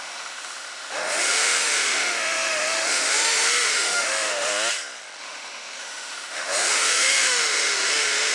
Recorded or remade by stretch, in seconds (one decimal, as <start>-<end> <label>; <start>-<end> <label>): 0.0-4.5 remade; 4.5-5.2 recorded; 5.2-8.3 remade